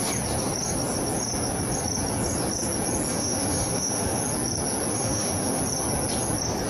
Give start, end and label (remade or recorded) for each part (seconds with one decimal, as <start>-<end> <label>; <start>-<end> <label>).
0.0-3.1 recorded; 3.1-4.2 remade; 4.2-4.9 recorded; 4.9-5.6 remade; 5.6-6.7 recorded